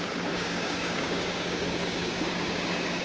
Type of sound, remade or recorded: remade